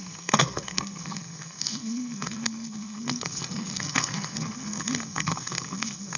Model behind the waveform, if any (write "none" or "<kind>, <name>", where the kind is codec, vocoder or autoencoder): codec, SNAC